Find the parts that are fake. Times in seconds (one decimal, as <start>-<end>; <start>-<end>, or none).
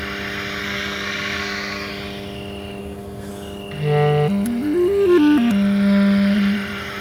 0.6-1.9; 2.8-3.3